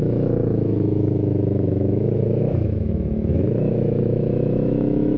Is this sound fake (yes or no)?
yes